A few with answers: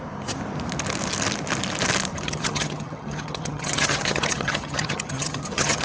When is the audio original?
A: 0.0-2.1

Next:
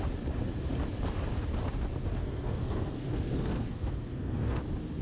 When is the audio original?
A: 0.0-2.2; 4.6-5.0

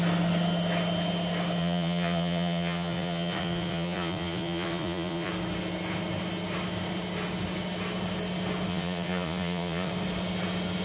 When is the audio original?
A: 0.0-1.6; 5.3-8.7; 9.9-10.8

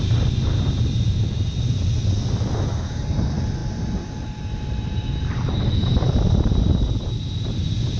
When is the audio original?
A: 0.0-8.0